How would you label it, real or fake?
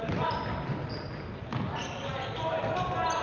real